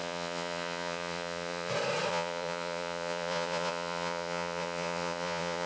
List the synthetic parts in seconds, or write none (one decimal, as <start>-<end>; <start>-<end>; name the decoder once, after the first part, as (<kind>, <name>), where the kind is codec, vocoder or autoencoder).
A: 0.0-1.7 (vocoder, Vocos); 2.1-5.7